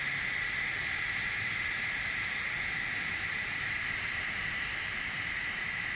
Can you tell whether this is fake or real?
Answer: real